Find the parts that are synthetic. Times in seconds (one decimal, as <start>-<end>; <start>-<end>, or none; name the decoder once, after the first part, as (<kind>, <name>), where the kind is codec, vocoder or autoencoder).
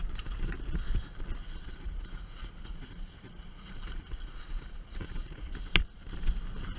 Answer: 1.4-5.5 (vocoder, Vocos)